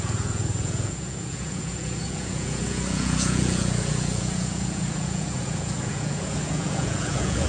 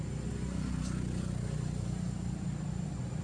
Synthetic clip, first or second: first